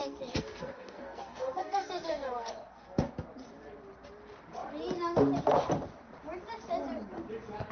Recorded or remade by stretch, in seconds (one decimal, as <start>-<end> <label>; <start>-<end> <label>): 0.0-3.1 remade; 3.1-7.7 recorded